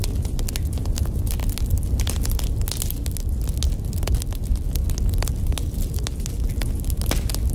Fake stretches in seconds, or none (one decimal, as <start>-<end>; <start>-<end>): none